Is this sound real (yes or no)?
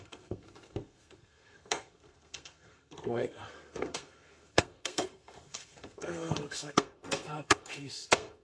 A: no